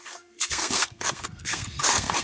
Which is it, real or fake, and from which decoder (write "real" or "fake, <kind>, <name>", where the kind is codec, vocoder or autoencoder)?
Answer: fake, codec, SNAC